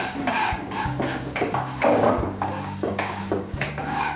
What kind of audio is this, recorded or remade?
remade